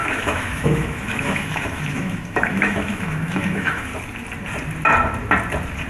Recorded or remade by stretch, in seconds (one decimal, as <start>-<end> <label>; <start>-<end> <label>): 0.0-3.9 remade; 3.9-5.9 recorded